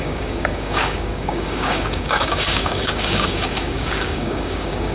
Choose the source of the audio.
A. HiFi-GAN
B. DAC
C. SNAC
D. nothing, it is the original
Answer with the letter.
B